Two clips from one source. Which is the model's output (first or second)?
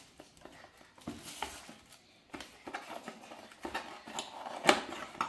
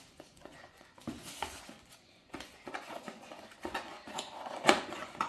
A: second